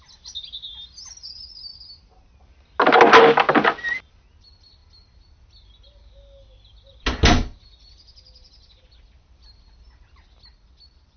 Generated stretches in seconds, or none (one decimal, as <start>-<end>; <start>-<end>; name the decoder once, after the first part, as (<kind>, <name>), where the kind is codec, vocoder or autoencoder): none